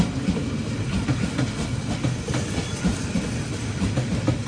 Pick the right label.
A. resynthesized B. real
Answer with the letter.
B